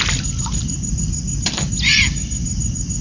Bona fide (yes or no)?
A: yes